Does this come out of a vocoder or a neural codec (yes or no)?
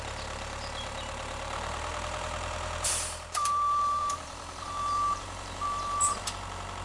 yes